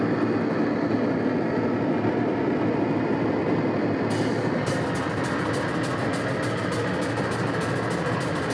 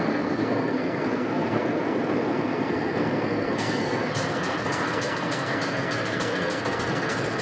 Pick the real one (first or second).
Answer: first